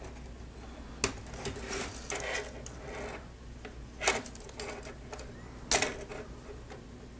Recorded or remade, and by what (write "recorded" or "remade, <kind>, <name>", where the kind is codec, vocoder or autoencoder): recorded